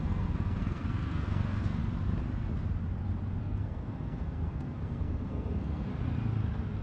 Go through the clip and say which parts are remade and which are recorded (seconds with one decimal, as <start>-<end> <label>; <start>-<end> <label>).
0.0-1.8 remade; 1.8-3.4 recorded; 3.4-5.9 remade; 5.9-6.8 recorded